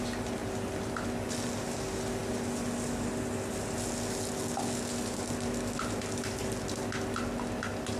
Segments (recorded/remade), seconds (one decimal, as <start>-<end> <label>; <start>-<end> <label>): 0.0-8.0 recorded